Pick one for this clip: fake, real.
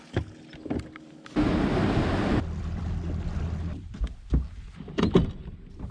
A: real